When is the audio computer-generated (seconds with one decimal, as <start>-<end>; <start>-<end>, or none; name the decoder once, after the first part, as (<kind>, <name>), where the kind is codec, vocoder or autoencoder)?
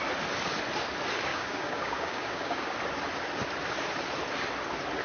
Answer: 1.3-2.7 (codec, DAC)